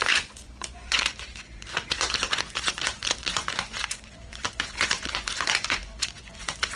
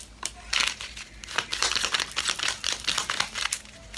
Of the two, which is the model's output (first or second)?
first